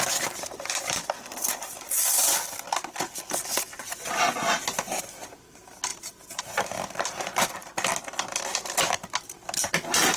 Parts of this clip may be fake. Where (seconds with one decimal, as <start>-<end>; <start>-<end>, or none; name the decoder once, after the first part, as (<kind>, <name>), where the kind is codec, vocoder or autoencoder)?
5.9-6.4 (vocoder, Vocos)